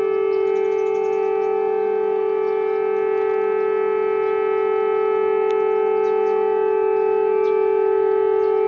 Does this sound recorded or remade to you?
recorded